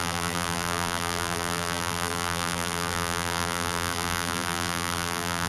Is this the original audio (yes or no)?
no